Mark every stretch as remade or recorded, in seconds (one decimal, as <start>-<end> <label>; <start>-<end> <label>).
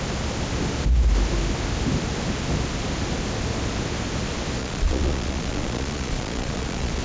0.0-4.6 recorded; 4.6-7.0 remade